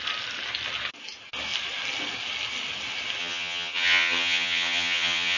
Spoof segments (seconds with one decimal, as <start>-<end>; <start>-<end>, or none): 3.2-5.4